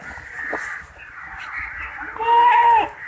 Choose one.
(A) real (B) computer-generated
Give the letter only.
A